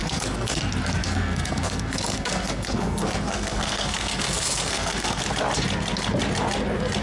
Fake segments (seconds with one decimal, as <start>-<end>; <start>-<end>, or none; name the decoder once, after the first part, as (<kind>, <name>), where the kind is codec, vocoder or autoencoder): 0.0-0.6 (codec, SNAC); 1.0-5.2